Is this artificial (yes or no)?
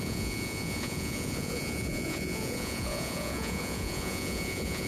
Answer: yes